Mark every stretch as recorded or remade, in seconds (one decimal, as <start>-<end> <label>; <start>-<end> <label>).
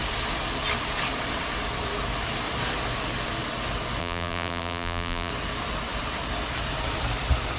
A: 0.0-4.0 recorded; 4.0-5.3 remade; 5.3-7.6 recorded